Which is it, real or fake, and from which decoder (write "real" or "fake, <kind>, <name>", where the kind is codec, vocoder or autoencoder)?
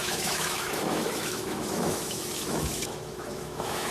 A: fake, autoencoder, DAC-VAE